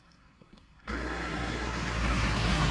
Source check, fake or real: fake